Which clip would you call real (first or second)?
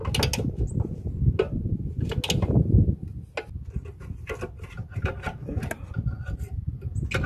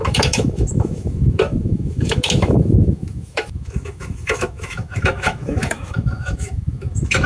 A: first